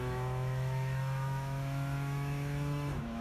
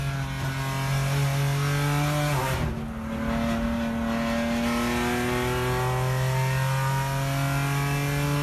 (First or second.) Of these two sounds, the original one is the second